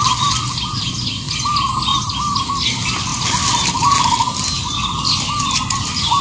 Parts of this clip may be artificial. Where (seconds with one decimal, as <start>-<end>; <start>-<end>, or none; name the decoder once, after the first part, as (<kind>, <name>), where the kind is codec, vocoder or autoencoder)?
none